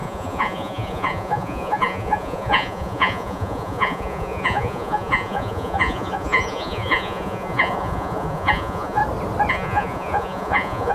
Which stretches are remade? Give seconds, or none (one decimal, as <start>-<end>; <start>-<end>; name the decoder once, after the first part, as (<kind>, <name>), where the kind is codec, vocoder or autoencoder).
0.0-9.0 (vocoder, Vocos); 9.5-10.9